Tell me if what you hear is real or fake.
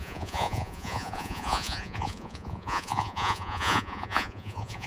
fake